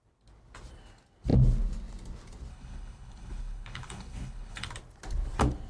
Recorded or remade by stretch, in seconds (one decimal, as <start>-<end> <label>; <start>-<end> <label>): 0.0-2.5 recorded; 2.5-4.7 remade; 4.7-5.7 recorded